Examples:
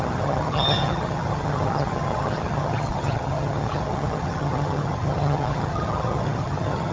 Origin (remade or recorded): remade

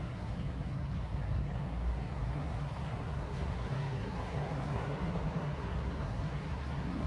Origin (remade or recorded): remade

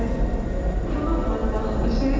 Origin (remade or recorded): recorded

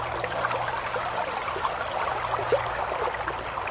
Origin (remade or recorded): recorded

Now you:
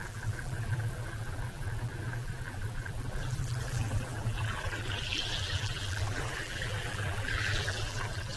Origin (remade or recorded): remade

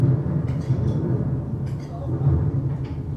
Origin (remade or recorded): remade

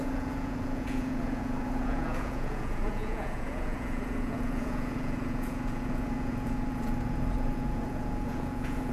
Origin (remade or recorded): remade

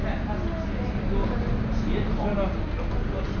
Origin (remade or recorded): recorded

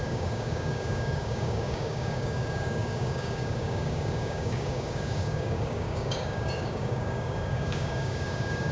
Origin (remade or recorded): remade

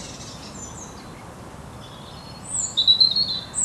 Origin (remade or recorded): recorded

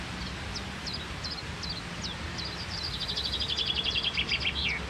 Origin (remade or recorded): recorded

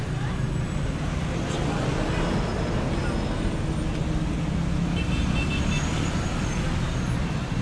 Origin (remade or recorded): recorded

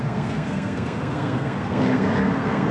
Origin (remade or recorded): remade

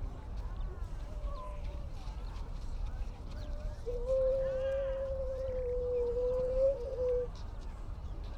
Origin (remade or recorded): remade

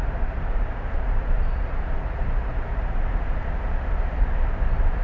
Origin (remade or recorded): remade